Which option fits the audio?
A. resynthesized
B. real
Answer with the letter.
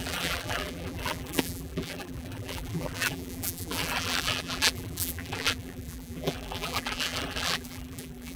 A